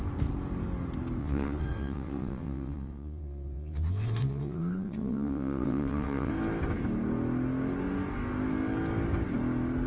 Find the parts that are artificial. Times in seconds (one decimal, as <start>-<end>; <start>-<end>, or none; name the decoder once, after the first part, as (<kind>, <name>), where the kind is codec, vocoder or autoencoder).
1.2-6.3 (vocoder, WaveNeXt)